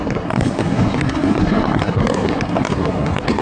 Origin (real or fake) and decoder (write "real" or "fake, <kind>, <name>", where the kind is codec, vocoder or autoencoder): fake, codec, SNAC